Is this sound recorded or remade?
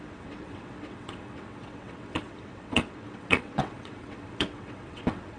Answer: remade